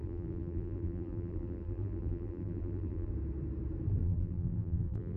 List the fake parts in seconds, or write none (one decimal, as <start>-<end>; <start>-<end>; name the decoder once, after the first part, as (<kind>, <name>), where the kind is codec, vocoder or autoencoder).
0.0-3.1 (vocoder, BigVGAN v2); 4.0-5.2